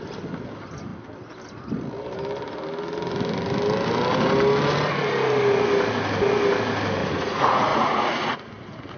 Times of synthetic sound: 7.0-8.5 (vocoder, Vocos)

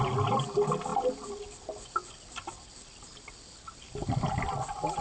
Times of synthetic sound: none

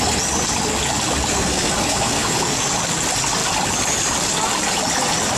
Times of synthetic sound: 1.3-2.4 (codec, SNAC)

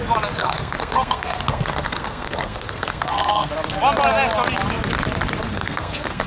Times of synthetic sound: 0.4-3.5 (codec, SNAC); 5.5-6.3

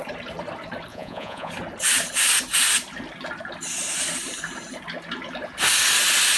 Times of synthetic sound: 0.9-1.5 (vocoder, Vocos)

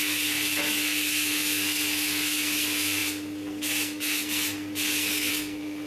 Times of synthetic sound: 0.0-5.9 (codec, SNAC)

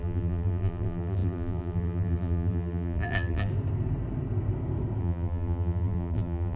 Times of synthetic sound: 0.0-3.5 (vocoder, BigVGAN v2); 5.0-6.6

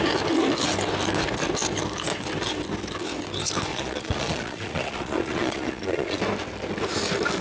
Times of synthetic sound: 3.7-6.2 (vocoder, Vocos)